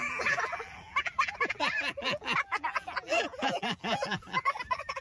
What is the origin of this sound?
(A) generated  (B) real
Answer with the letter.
A